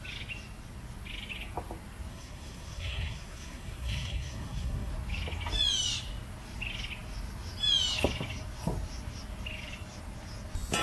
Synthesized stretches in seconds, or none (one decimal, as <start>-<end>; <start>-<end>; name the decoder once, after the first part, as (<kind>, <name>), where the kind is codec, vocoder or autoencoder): 2.1-4.9 (codec, SNAC)

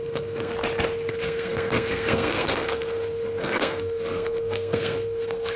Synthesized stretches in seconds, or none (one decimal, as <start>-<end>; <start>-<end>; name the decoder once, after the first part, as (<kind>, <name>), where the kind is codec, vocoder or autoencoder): 0.0-0.5 (codec, SNAC); 1.1-5.6

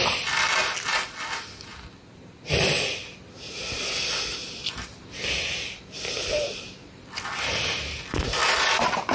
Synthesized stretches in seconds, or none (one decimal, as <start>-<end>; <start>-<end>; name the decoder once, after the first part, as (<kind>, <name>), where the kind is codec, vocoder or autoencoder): none

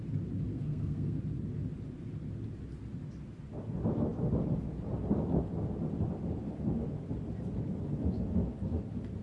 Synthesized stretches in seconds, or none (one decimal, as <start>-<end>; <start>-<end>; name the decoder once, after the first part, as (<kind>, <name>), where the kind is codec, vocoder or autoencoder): 0.5-1.2 (codec, SNAC)

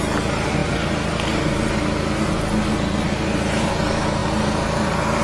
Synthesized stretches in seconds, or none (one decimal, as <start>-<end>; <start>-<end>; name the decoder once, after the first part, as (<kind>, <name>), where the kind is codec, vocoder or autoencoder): none

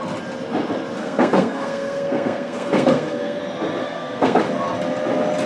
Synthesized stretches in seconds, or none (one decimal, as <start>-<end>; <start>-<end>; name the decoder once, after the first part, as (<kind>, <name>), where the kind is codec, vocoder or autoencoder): 1.0-3.4 (codec, SNAC); 3.8-4.4